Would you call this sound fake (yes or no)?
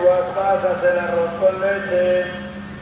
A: no